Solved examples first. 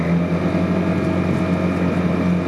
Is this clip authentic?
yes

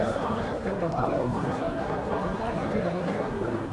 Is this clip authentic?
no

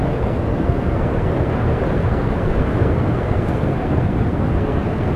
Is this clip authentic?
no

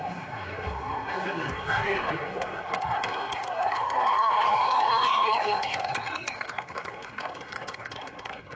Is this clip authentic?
no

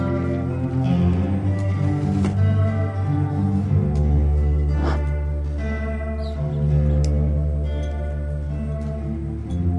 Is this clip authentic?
yes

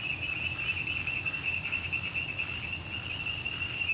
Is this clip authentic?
yes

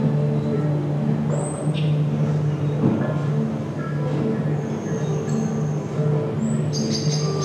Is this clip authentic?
yes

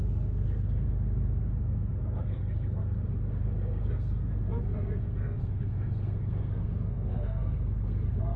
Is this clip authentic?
no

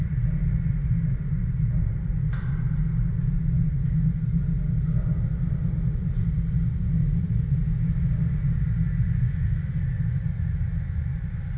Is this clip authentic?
yes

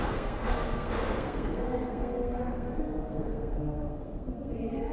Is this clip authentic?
no